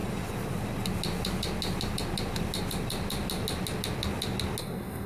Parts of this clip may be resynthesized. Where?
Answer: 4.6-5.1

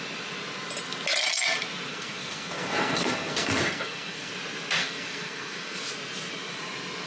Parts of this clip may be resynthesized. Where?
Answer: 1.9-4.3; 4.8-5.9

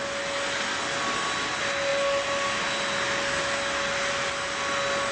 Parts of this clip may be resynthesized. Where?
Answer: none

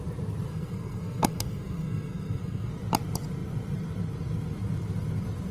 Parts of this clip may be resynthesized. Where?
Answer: 0.5-2.7